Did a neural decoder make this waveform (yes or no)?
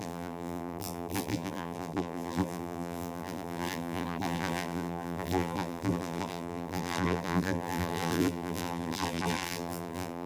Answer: yes